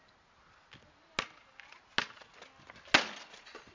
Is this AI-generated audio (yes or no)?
no